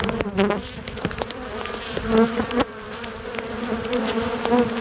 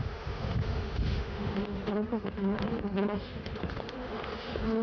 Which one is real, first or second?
first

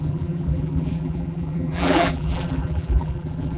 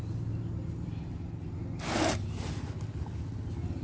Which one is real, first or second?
second